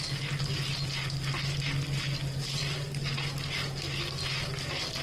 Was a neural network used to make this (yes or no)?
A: no